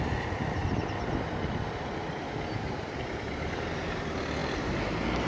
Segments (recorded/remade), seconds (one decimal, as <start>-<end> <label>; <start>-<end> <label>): 0.0-5.3 recorded